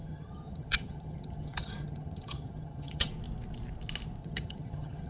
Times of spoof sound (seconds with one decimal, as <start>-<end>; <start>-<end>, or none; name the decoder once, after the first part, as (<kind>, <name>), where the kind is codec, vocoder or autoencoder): 0.0-3.1 (vocoder, HiFi-GAN); 4.2-5.1